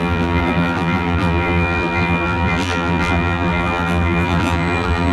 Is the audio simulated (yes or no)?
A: yes